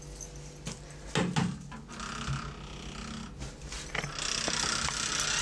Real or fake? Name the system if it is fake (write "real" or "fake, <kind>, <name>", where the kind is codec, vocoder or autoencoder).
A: real